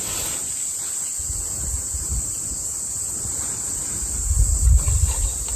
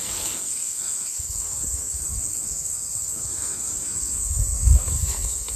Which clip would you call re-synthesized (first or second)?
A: second